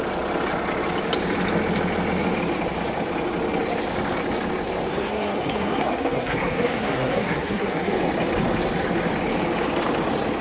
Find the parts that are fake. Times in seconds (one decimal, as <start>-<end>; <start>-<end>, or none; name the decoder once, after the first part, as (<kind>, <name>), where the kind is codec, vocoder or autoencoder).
4.9-7.9 (codec, SNAC)